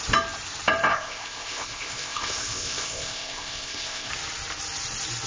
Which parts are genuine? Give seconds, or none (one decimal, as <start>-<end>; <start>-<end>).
0.0-0.9; 4.1-5.3